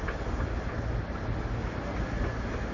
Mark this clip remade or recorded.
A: recorded